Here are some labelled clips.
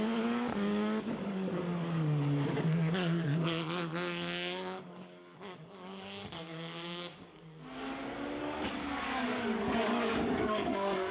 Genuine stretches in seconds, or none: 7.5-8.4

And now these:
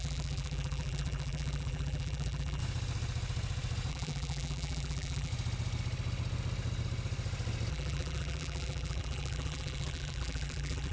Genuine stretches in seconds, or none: 2.6-3.9; 5.3-7.7

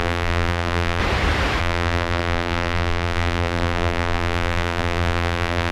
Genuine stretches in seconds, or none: 1.0-1.6

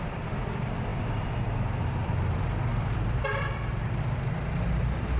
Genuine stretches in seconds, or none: none

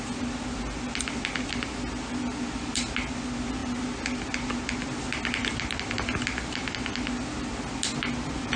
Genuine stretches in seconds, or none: 0.0-8.6

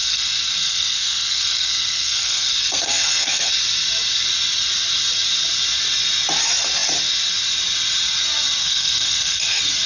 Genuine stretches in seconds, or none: 3.5-8.6; 9.4-9.9